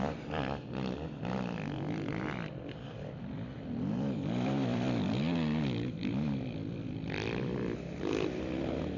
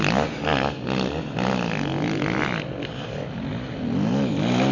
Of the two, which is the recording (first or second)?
second